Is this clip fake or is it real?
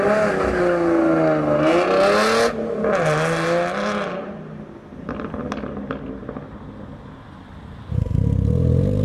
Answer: real